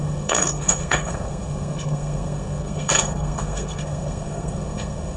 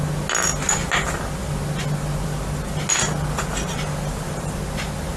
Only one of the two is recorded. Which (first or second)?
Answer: second